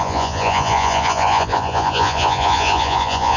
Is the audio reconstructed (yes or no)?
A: yes